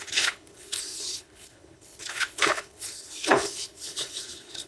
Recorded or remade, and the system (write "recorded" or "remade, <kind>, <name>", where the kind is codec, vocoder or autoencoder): remade, codec, HILCodec